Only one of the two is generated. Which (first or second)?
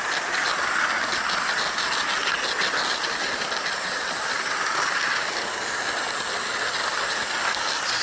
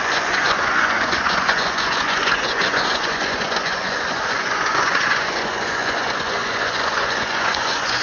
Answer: second